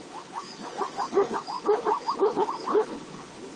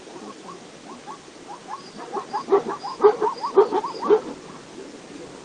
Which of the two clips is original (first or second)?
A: second